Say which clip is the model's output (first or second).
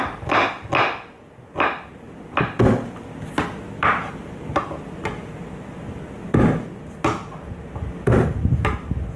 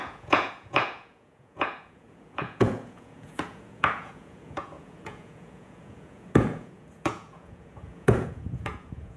second